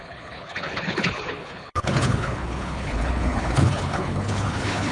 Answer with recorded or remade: remade